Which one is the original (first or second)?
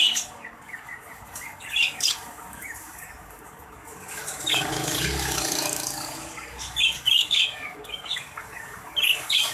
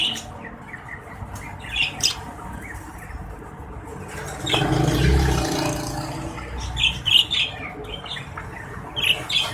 second